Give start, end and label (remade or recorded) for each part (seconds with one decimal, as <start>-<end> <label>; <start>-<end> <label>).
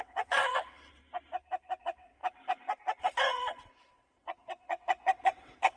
0.0-1.0 remade; 1.0-1.8 recorded; 1.8-2.2 remade; 2.2-3.0 recorded; 3.0-5.8 remade